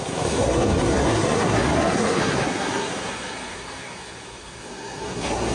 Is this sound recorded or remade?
remade